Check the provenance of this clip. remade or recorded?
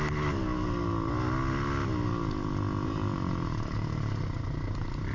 recorded